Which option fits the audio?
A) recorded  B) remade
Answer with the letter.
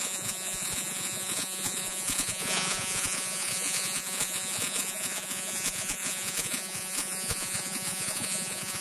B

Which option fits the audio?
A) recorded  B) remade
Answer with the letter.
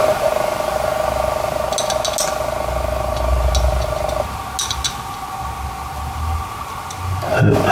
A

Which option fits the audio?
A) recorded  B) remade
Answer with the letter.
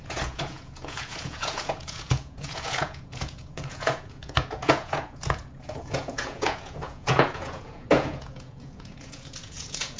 B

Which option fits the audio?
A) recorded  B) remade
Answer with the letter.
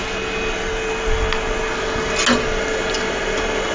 A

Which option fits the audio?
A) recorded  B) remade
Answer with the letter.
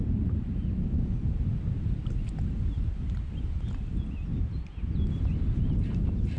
A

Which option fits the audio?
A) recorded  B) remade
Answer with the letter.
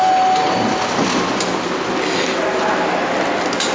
A